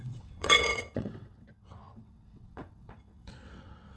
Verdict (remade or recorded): remade